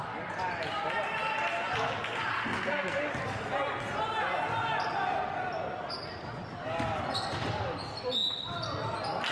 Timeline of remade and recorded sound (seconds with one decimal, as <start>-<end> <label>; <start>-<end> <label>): 0.0-2.3 recorded; 2.3-3.0 remade; 3.0-9.3 recorded